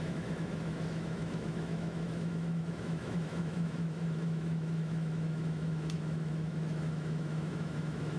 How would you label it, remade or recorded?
remade